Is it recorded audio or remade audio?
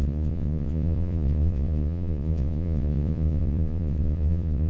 remade